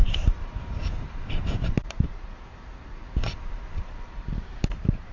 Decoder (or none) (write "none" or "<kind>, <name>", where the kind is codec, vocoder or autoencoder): vocoder, BigVGAN v2